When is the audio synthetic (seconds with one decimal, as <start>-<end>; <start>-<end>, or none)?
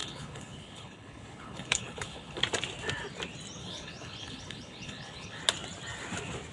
0.0-2.4; 3.6-5.4